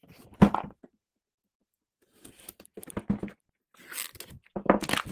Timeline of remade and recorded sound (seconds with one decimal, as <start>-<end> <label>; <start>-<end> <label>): 0.0-3.1 remade; 3.1-5.1 recorded